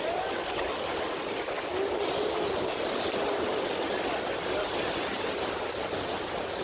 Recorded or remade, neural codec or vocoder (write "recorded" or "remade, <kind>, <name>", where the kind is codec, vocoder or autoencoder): recorded